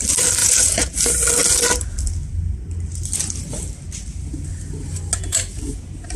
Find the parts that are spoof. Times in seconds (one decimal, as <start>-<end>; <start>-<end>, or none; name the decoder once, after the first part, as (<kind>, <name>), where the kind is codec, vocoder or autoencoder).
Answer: 0.4-0.9 (vocoder, Vocos)